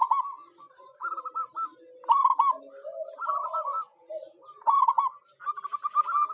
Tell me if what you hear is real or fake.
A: real